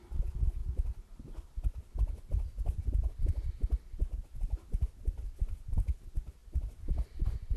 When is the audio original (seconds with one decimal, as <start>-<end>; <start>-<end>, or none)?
0.0-7.6